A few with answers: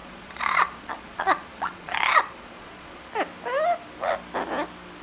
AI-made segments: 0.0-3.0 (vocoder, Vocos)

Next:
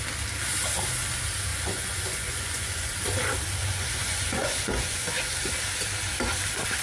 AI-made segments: 1.5-2.9 (vocoder, Vocos); 3.6-5.5

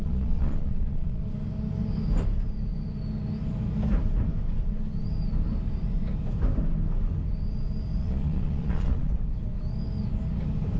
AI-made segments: 0.0-1.2 (vocoder, Vocos); 8.0-9.2